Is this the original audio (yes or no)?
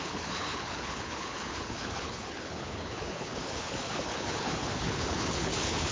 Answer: no